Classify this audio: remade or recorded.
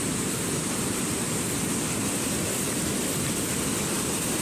recorded